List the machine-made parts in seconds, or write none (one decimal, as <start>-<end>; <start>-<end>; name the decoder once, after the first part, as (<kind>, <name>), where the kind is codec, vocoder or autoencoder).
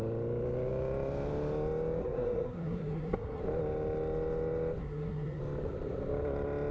2.0-3.4 (codec, SNAC); 4.8-5.4